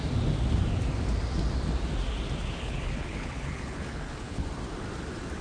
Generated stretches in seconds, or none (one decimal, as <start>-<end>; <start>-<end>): 2.4-4.5